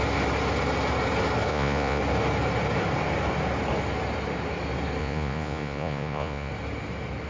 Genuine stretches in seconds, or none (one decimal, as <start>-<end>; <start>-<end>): 0.0-1.5; 2.0-5.0; 6.5-7.3